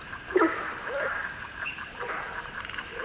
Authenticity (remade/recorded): remade